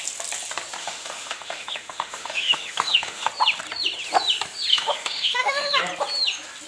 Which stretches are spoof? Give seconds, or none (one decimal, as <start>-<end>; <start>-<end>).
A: 0.8-3.3; 4.7-5.8